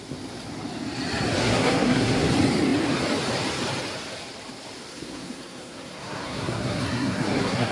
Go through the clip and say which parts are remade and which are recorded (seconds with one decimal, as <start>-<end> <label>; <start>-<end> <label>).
0.0-1.4 recorded; 1.4-2.3 remade; 2.3-4.9 recorded; 4.9-7.7 remade

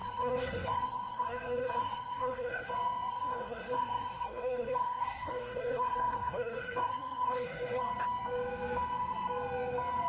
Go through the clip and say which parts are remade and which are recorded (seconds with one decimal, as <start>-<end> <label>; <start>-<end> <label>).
0.0-2.7 remade; 2.7-3.1 recorded; 3.1-7.8 remade; 7.8-10.1 recorded